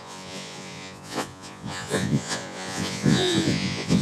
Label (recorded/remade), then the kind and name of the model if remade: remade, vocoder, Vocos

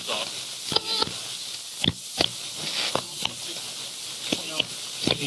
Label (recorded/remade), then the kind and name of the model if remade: recorded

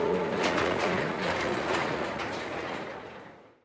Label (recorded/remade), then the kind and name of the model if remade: remade, vocoder, Vocos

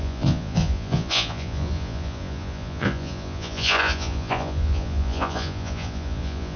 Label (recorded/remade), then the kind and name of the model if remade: remade, vocoder, Vocos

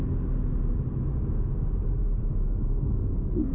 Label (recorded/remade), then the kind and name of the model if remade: recorded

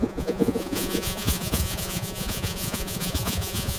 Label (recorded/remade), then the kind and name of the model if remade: remade, vocoder, Vocos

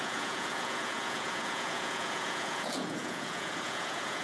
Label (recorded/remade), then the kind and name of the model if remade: remade, vocoder, Vocos